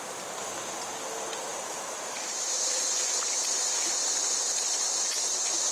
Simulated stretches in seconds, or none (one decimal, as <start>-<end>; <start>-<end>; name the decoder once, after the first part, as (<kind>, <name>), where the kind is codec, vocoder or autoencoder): 1.5-2.8 (vocoder, BigVGAN v2)